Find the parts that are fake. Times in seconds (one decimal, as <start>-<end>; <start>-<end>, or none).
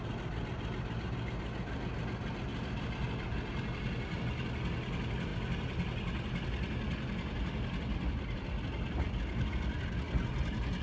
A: none